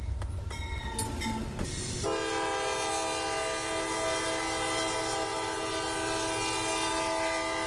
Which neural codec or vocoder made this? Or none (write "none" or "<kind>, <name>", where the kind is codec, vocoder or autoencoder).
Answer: none